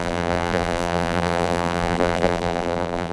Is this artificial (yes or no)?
yes